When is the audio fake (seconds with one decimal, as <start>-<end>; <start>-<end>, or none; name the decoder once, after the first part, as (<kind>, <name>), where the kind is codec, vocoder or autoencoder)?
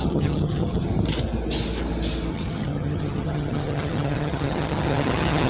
0.0-0.9 (vocoder, HiFi-GAN); 2.3-5.5